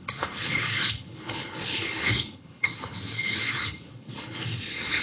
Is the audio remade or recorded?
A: remade